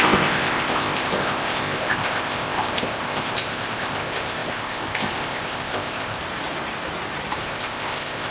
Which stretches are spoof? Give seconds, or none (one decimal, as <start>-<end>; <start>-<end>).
0.0-6.2; 7.4-8.3